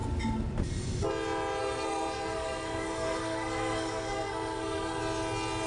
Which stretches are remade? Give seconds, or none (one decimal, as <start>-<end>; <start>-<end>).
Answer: 1.6-5.0